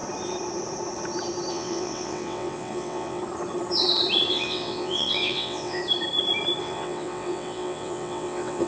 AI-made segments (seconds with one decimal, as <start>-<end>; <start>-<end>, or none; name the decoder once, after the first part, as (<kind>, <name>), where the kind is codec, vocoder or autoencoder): 1.5-3.2 (vocoder, WaveNeXt); 4.3-5.8; 6.6-8.7